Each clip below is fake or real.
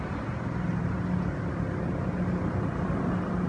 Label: real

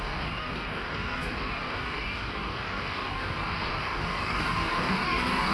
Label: fake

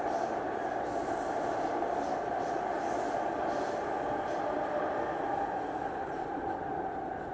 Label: real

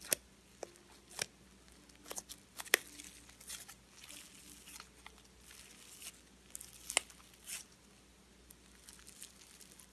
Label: real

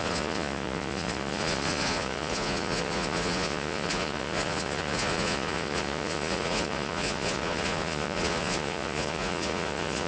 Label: fake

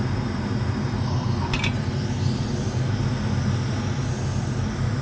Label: real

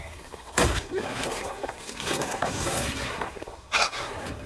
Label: fake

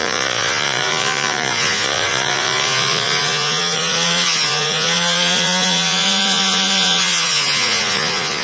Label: fake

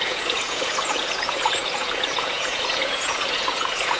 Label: fake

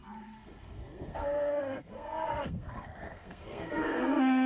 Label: fake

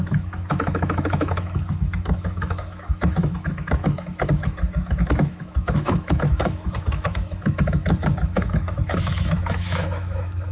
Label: fake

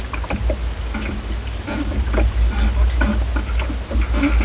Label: real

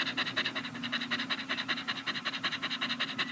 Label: real